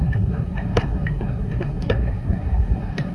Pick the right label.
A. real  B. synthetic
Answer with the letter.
B